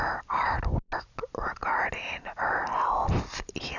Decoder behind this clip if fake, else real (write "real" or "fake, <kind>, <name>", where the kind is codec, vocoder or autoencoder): real